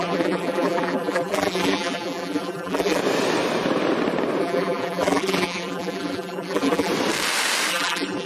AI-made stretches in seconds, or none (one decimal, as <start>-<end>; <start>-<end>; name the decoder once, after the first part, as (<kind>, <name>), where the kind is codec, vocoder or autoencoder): 0.0-3.0 (vocoder, BigVGAN v2); 4.4-6.9; 7.7-8.3